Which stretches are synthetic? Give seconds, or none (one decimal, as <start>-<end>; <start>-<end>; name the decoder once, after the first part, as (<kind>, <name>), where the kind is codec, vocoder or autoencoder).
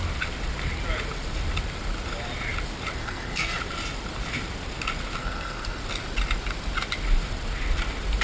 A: 3.0-3.6 (codec, SNAC); 5.2-5.8